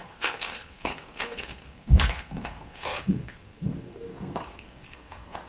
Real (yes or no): no